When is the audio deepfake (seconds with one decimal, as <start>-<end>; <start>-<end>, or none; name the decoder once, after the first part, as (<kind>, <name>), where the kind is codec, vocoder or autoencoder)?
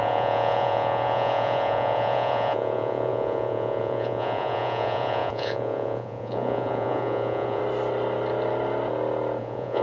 0.0-7.6 (vocoder, Vocos); 9.4-9.8